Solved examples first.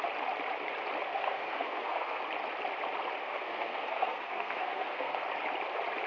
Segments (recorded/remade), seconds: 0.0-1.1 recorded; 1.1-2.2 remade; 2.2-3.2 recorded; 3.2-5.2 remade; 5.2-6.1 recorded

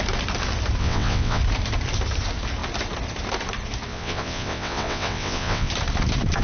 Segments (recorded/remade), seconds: 0.0-0.8 recorded; 0.8-1.4 remade; 1.4-3.9 recorded; 3.9-5.7 remade; 5.7-6.4 recorded